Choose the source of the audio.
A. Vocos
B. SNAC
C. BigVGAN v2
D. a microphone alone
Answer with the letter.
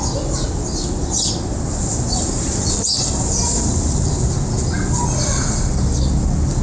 D